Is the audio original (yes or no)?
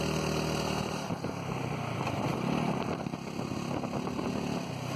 yes